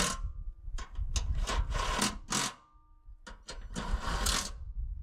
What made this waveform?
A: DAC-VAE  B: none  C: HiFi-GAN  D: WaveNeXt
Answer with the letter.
B